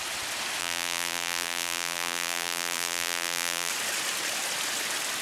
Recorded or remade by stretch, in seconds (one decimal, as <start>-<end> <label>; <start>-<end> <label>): 0.0-0.6 recorded; 0.6-3.7 remade; 3.7-5.2 recorded